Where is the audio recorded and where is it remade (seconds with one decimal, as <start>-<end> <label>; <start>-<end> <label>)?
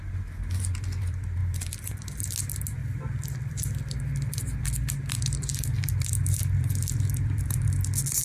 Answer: 0.0-2.8 recorded; 2.8-7.7 remade; 7.7-8.2 recorded